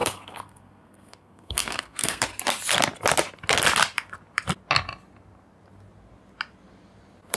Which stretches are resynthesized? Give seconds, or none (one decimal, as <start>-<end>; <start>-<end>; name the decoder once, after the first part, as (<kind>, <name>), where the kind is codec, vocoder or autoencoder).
0.0-2.2 (codec, SNAC)